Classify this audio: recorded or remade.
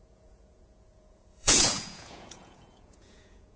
remade